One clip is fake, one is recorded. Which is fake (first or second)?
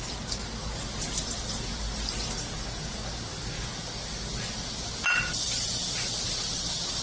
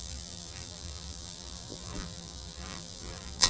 second